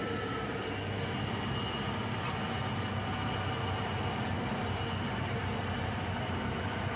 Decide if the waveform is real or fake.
real